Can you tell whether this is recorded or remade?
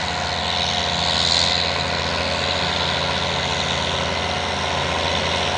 recorded